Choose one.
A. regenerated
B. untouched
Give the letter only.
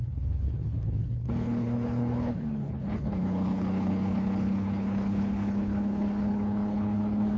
A